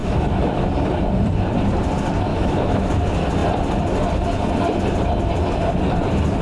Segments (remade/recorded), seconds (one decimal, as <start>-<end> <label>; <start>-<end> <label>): 0.0-0.7 remade; 0.7-2.3 recorded; 2.3-2.9 remade; 2.9-6.4 recorded